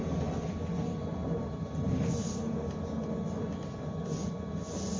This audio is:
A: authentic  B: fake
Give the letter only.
A